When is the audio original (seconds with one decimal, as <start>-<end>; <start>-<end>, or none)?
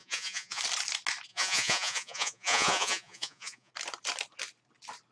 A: 0.6-1.3; 3.7-5.1